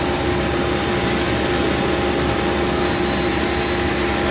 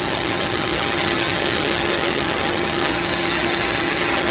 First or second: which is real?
first